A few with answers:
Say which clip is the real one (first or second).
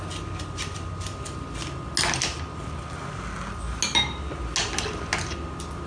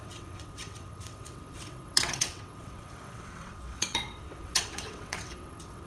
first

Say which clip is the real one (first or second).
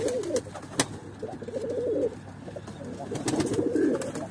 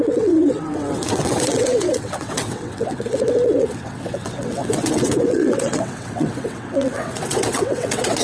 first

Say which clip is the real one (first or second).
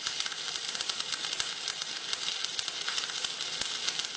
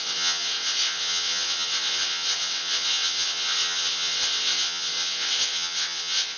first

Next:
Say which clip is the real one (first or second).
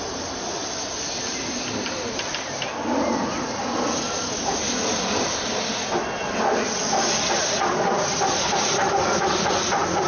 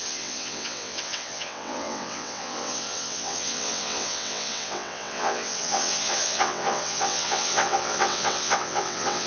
first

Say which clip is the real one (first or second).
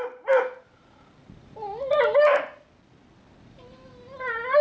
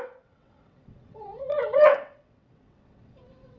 first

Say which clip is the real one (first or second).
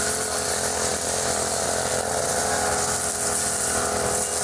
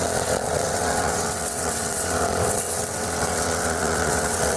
first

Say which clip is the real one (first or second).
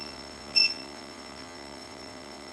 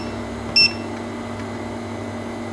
second